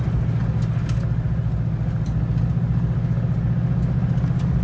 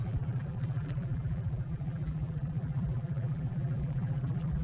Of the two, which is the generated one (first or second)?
second